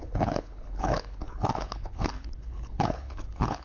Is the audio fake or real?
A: fake